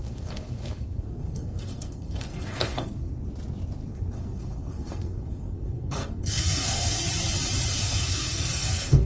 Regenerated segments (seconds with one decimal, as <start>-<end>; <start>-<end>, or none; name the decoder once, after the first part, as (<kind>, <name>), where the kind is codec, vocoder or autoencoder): 0.0-3.2 (codec, SNAC); 3.8-7.1; 7.7-9.1

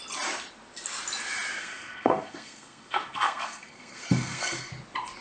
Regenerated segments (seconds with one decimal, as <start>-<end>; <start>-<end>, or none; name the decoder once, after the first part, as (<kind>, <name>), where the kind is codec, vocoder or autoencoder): 1.6-4.7 (codec, SNAC)

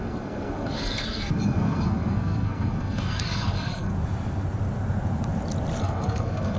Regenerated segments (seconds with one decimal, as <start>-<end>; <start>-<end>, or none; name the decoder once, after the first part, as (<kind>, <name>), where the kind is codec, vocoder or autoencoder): 0.0-3.9 (codec, SNAC); 5.8-6.6

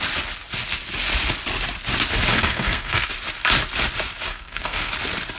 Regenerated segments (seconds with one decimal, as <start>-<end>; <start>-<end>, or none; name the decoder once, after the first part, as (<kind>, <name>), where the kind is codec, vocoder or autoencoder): 2.3-3.1 (codec, SNAC); 4.3-4.9

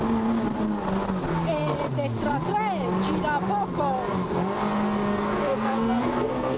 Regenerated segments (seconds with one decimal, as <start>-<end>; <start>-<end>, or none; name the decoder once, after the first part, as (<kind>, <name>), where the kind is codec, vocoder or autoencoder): 5.1-6.6 (codec, SNAC)

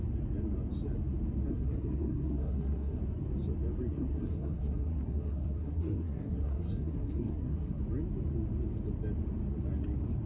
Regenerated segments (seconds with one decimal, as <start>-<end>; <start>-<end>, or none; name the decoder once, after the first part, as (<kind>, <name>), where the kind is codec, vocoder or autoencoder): 1.5-3.0 (codec, SNAC); 3.9-7.8

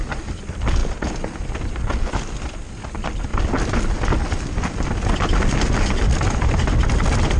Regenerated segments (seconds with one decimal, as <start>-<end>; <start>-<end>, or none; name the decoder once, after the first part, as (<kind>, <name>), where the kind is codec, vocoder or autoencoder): none

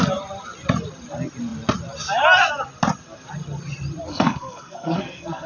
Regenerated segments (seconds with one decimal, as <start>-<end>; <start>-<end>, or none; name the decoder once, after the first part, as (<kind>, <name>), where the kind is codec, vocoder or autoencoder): 4.1-5.5 (codec, SNAC)